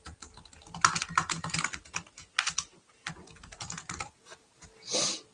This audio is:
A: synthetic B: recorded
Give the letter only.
B